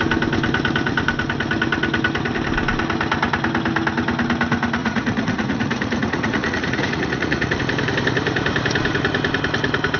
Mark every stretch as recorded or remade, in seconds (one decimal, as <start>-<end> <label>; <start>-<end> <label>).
0.0-4.8 recorded; 4.8-7.6 remade; 7.6-10.0 recorded